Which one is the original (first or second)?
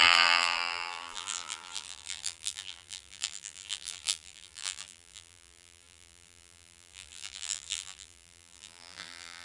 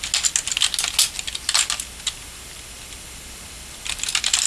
second